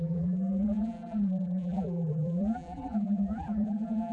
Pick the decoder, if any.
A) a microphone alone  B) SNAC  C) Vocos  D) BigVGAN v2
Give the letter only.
D